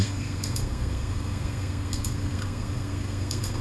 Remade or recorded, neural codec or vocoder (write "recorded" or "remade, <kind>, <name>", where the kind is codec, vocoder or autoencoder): remade, codec, SNAC